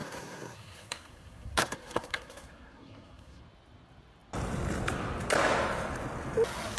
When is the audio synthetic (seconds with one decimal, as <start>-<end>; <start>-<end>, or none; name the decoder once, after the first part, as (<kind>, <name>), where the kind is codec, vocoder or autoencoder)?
0.0-3.4 (codec, SNAC)